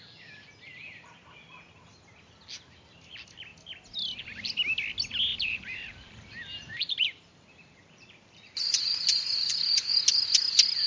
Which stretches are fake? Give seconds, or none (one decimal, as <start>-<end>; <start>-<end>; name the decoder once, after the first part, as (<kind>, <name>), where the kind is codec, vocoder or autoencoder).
5.3-9.6 (vocoder, BigVGAN v2)